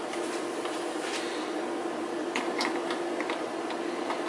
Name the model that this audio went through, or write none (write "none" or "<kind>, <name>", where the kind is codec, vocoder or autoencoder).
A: none